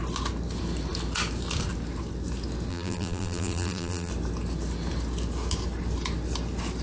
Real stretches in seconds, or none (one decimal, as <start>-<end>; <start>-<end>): 0.0-2.7; 4.1-6.8